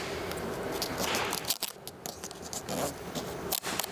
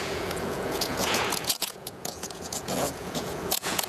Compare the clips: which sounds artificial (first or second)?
second